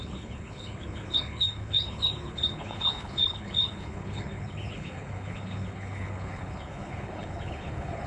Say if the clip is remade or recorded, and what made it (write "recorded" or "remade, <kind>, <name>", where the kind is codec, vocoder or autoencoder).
remade, codec, HILCodec